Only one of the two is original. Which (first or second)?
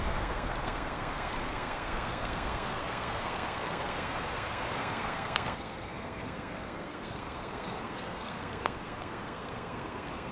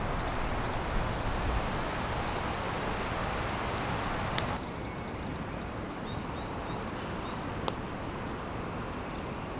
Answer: second